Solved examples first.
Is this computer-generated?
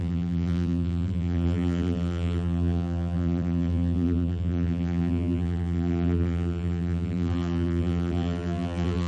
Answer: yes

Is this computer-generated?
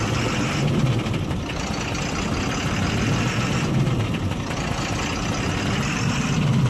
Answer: no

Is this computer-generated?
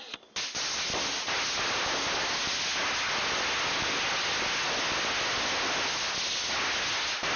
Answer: no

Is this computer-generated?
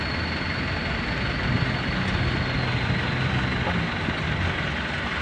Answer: no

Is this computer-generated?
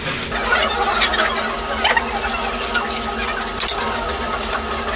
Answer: no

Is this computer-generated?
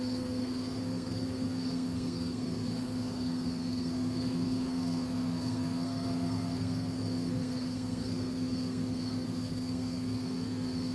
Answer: yes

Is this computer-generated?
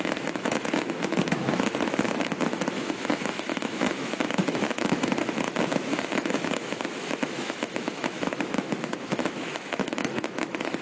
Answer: yes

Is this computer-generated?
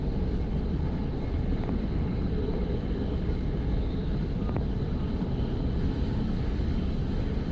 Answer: no